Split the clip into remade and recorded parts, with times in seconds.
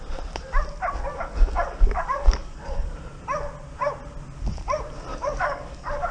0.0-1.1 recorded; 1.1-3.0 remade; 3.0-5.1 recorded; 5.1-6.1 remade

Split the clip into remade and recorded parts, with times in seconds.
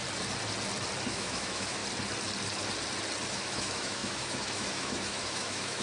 0.0-1.1 recorded; 1.1-1.8 remade; 1.8-3.3 recorded; 3.3-5.8 remade